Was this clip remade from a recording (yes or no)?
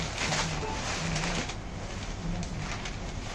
no